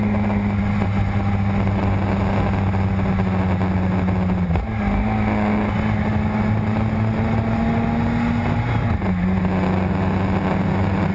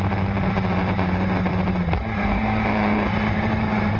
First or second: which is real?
first